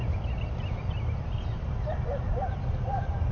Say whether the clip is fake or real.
real